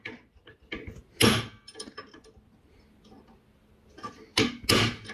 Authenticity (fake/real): real